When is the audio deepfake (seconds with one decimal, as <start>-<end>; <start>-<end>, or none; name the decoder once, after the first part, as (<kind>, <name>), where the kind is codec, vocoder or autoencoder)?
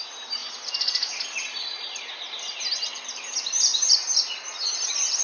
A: none